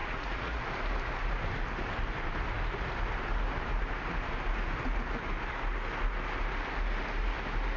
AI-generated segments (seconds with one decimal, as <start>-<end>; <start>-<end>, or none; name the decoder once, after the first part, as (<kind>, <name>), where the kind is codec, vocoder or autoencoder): 0.0-0.6 (vocoder, Vocos)